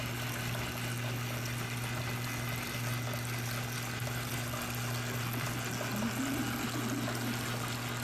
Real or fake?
real